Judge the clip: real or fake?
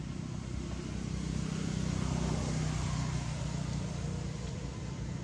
real